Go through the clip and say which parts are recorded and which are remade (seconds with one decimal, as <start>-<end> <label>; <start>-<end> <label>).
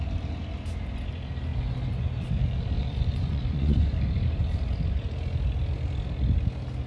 0.0-2.8 recorded; 2.8-3.9 remade; 3.9-6.9 recorded